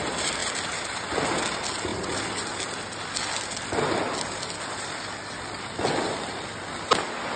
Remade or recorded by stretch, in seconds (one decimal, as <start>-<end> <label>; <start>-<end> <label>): 0.0-7.4 recorded